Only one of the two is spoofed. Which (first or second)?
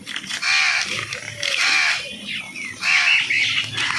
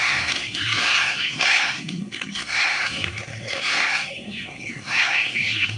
second